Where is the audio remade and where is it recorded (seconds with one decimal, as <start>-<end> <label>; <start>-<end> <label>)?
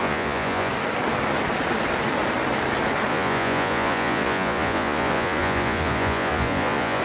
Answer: 0.0-0.7 remade; 0.7-3.1 recorded; 3.1-7.0 remade